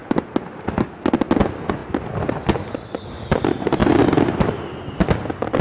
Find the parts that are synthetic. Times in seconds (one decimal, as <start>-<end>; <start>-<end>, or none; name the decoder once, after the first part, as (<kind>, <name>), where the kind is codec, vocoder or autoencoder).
none